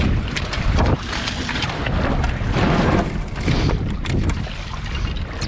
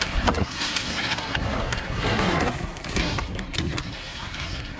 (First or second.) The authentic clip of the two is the first